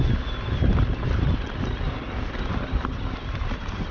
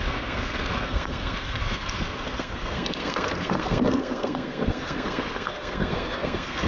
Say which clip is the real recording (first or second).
first